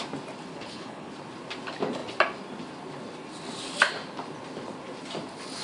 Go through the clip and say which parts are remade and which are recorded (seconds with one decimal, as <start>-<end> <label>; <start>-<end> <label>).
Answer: 0.0-0.5 recorded; 0.5-1.1 remade; 1.1-5.6 recorded